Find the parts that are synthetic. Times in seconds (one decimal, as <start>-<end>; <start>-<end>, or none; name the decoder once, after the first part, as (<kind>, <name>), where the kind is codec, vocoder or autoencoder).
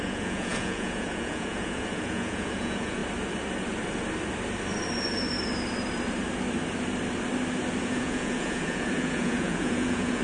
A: 0.0-3.0 (vocoder, Vocos); 7.8-10.2